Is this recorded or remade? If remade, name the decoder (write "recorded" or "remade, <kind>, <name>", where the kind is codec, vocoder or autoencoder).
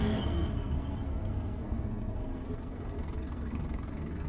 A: remade, codec, SNAC